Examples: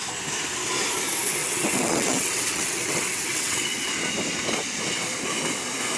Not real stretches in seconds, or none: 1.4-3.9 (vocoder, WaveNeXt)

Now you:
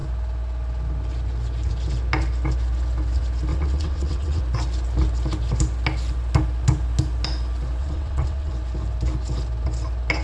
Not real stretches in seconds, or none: 3.5-4.4 (vocoder, WaveNeXt); 7.8-8.5

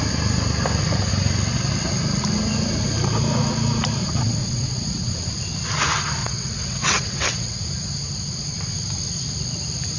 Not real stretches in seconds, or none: 4.4-5.1 (vocoder, WaveNeXt); 6.2-7.6

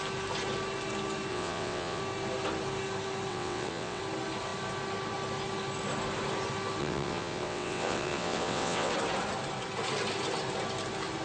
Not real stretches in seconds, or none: 1.3-2.0 (vocoder, WaveNeXt); 3.3-4.0; 6.8-8.9

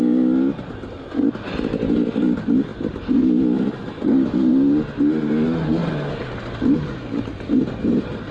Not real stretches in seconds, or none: none

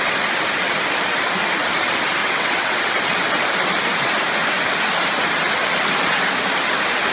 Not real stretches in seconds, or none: 2.2-2.8 (vocoder, WaveNeXt)

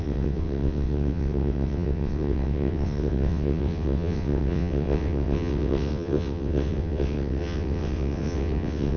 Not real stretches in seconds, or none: 0.0-9.0 (vocoder, WaveNeXt)

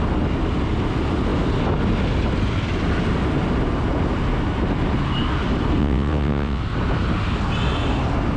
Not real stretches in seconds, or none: 5.8-6.6 (vocoder, WaveNeXt)